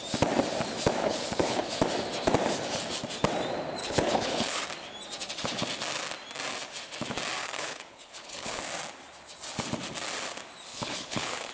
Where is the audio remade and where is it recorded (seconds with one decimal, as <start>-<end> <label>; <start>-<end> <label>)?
0.0-1.0 recorded; 1.0-1.8 remade; 1.8-3.8 recorded; 3.8-4.6 remade; 4.6-7.4 recorded; 7.4-8.6 remade; 8.6-10.7 recorded; 10.7-11.5 remade